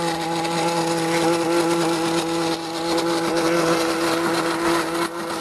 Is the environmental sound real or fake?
real